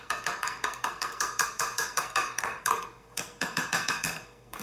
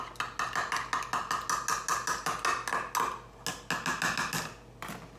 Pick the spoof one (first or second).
first